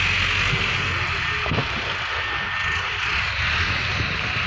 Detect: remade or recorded recorded